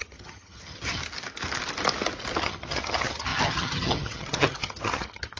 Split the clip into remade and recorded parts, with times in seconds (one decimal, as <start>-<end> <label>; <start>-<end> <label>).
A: 0.0-1.0 remade; 1.0-2.4 recorded; 2.4-5.4 remade